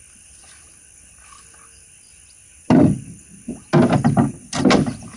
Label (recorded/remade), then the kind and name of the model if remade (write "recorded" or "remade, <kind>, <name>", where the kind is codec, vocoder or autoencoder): recorded